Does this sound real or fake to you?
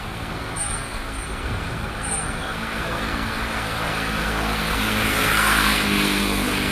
fake